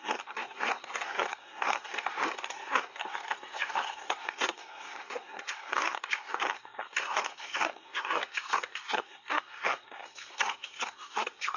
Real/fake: fake